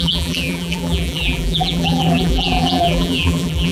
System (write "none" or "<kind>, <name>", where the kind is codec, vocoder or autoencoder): vocoder, BigVGAN v2